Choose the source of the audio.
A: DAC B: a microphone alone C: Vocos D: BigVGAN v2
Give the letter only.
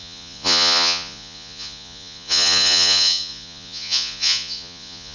C